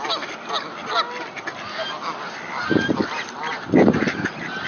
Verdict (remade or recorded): remade